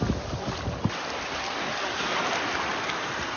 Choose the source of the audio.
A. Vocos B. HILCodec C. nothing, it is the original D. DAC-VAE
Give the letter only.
C